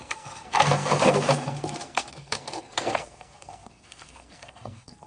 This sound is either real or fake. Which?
fake